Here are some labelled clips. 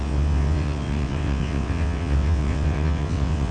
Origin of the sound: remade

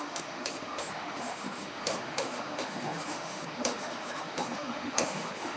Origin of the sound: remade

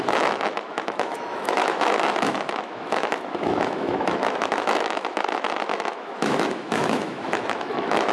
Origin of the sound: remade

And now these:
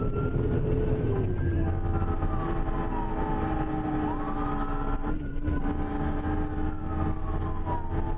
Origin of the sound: recorded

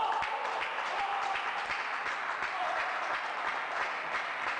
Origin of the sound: remade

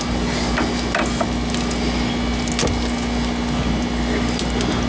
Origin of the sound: recorded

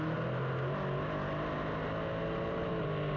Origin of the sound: recorded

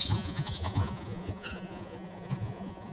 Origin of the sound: remade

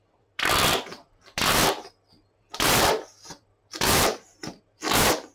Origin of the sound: remade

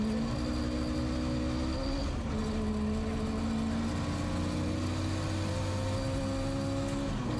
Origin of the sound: recorded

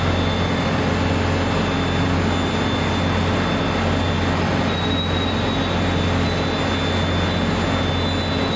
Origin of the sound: recorded